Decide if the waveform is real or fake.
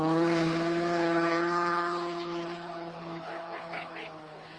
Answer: fake